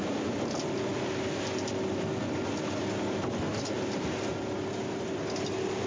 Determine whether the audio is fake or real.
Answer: real